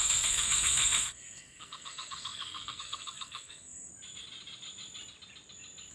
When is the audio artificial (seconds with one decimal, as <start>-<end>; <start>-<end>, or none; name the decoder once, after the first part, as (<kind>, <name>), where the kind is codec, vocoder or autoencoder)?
0.0-3.9 (codec, SNAC)